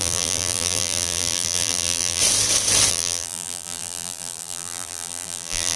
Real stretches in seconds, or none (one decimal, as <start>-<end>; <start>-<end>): 2.2-2.9